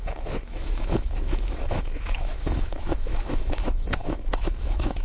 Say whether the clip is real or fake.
fake